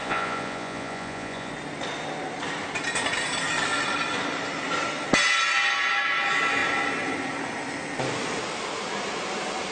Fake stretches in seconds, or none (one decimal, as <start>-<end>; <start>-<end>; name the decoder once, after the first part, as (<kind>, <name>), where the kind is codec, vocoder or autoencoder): 0.0-1.5 (vocoder, Vocos)